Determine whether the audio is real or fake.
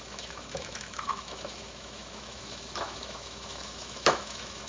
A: fake